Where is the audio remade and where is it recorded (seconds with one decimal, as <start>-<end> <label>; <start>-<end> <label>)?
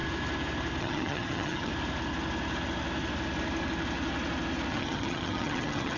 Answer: 0.0-0.8 recorded; 0.8-1.7 remade; 1.7-4.7 recorded; 4.7-6.0 remade